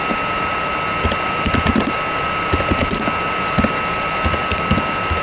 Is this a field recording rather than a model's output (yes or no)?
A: yes